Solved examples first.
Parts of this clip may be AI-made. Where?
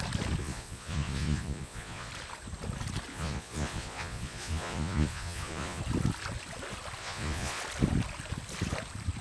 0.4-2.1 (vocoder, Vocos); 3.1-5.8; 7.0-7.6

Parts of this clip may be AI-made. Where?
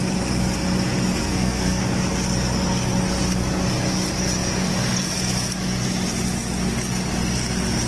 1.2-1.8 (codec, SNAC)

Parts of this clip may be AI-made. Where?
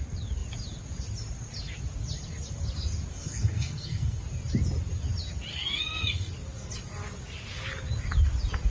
3.1-4.2 (codec, SNAC); 5.5-6.3